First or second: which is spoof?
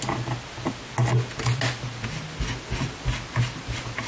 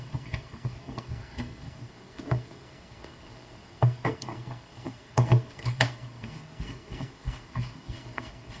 second